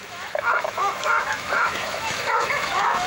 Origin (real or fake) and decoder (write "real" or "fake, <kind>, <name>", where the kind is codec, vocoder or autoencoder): fake, autoencoder, DAC-VAE